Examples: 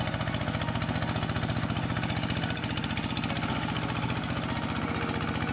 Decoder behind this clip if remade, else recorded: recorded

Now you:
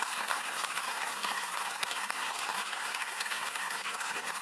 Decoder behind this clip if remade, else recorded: remade, codec, SNAC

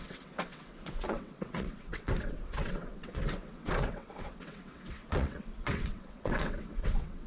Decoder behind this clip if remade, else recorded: remade, vocoder, WaveNeXt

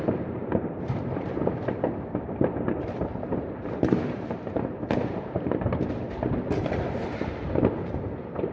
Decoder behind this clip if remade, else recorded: remade, vocoder, BigVGAN v2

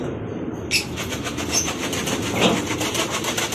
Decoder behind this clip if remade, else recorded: recorded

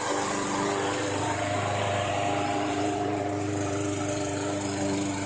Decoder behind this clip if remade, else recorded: remade, vocoder, BigVGAN v2